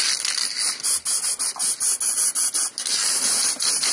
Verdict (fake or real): real